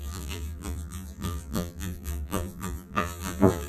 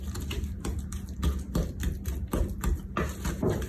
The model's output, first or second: first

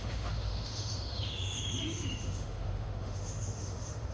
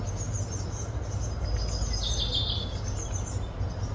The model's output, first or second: first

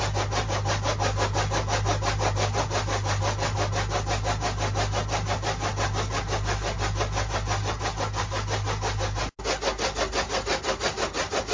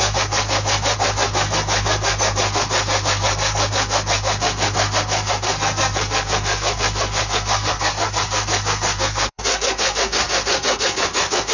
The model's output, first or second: second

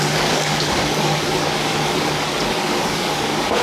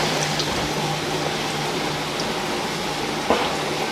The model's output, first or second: first